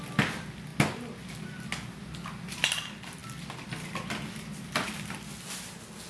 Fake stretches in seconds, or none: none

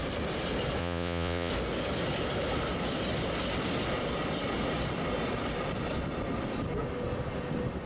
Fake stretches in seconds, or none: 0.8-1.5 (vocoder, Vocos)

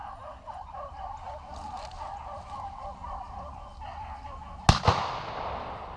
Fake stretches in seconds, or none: 0.0-1.4 (vocoder, BigVGAN v2)

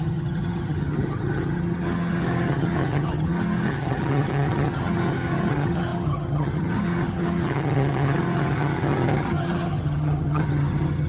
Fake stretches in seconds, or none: 0.0-11.1 (vocoder, HiFi-GAN)

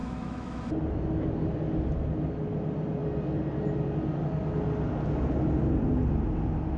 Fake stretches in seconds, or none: 0.0-0.7 (autoencoder, DAC-VAE)

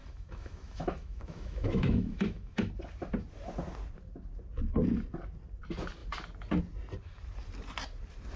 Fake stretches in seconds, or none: 0.0-2.7 (autoencoder, DAC-VAE)

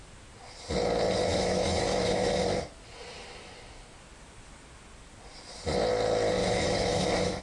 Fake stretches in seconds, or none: 1.3-2.4 (autoencoder, DAC-VAE); 6.4-7.4

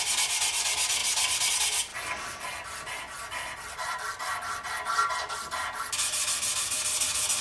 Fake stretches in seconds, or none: none